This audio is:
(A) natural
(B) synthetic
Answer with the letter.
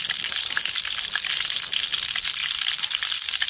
A